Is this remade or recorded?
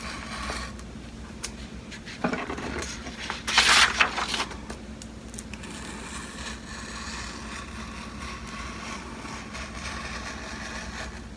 recorded